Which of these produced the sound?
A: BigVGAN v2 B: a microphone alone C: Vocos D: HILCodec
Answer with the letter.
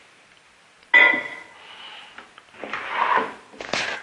B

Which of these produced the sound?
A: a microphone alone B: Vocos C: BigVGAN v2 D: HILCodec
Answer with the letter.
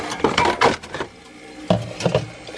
A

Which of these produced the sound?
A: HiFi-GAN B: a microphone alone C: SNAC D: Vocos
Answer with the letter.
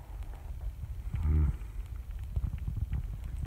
B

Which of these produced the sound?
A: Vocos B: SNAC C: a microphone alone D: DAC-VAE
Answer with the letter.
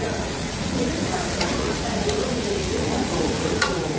A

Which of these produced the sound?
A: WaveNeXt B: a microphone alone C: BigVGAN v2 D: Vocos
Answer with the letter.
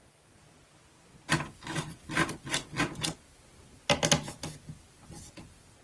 B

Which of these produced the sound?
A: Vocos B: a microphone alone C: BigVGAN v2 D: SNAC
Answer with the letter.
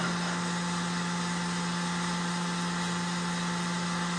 B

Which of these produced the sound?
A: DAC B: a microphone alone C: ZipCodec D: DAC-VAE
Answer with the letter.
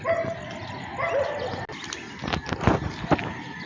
B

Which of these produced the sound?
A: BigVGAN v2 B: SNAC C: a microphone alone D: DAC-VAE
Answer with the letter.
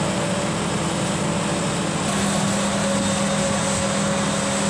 C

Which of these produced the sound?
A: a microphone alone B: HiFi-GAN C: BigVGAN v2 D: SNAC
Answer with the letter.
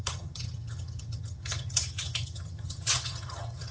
B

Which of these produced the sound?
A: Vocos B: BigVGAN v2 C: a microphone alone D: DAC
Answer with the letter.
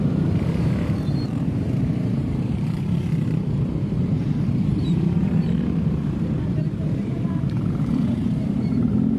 B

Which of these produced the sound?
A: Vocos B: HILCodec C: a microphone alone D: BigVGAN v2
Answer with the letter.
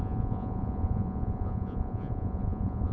A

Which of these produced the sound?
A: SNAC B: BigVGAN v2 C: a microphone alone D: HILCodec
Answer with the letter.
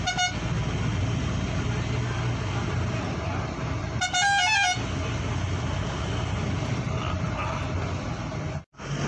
C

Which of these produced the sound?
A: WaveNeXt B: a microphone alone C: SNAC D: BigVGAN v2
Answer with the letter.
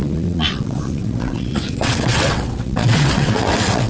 A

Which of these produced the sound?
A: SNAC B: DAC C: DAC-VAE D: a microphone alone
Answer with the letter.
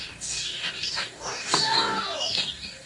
B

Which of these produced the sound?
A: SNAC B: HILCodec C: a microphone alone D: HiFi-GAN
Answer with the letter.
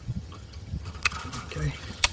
D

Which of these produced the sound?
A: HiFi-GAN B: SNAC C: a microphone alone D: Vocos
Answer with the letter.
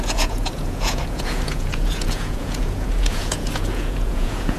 D